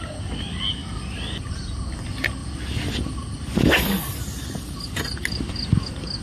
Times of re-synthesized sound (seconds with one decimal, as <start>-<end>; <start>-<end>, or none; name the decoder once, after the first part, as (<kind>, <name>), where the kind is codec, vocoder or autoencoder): none